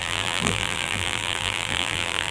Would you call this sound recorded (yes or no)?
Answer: no